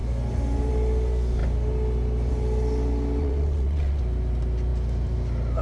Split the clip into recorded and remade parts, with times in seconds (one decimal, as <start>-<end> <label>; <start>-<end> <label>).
0.0-3.2 recorded; 3.2-4.0 remade; 4.0-5.6 recorded